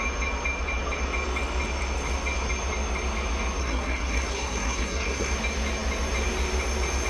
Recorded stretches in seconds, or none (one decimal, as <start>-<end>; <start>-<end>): 0.0-3.6; 5.3-7.1